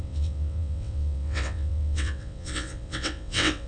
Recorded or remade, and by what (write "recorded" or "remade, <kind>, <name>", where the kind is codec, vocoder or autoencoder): remade, vocoder, WaveNeXt